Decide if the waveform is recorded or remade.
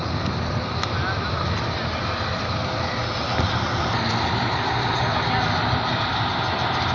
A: recorded